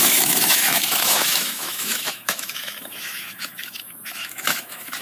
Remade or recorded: remade